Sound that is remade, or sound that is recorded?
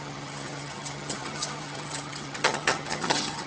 remade